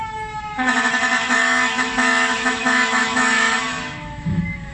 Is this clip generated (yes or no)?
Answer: yes